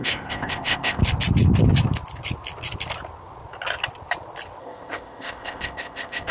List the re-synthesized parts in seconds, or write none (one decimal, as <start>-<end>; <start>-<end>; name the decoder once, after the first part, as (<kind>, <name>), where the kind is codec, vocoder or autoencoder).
0.0-1.0 (codec, ZipCodec); 4.6-6.3